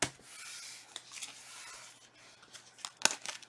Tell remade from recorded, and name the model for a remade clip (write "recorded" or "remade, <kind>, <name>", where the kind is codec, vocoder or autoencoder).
recorded